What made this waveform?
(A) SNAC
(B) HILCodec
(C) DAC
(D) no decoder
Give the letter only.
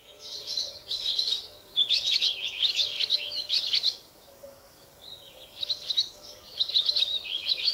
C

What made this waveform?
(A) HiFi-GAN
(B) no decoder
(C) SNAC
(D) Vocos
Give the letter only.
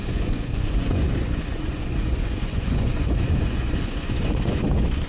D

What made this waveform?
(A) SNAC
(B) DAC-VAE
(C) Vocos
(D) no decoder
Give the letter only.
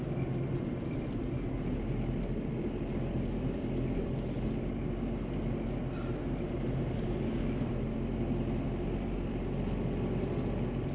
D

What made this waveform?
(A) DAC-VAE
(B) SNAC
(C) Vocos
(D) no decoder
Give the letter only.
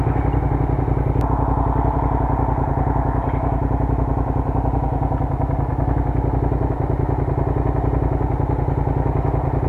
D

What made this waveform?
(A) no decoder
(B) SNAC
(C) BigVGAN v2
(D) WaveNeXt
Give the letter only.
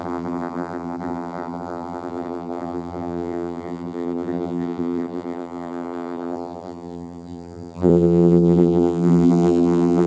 C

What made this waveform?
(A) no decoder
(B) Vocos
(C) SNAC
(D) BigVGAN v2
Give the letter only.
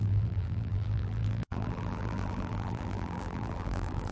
D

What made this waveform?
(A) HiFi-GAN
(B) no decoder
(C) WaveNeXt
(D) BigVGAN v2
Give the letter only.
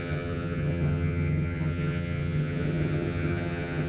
A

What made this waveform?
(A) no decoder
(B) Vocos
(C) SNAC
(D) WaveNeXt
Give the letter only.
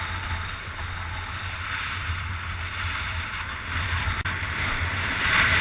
A